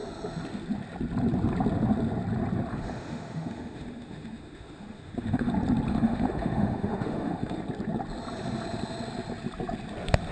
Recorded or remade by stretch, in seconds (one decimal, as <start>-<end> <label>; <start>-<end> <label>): 0.0-2.7 recorded; 2.7-5.5 remade; 5.5-5.9 recorded; 5.9-7.6 remade; 7.6-10.3 recorded